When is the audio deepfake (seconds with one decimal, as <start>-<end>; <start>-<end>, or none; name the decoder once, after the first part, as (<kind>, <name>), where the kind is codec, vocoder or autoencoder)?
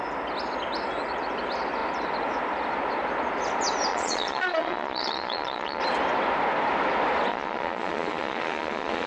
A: 3.9-5.8 (vocoder, Vocos); 7.3-9.1